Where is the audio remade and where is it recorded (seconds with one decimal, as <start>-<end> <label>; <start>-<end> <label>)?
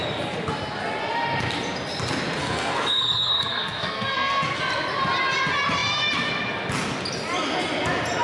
0.0-2.4 recorded; 2.4-4.6 remade; 4.6-8.2 recorded